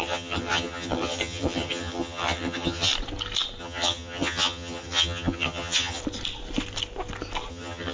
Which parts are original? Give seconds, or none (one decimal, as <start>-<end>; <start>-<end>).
2.9-3.6; 6.0-7.5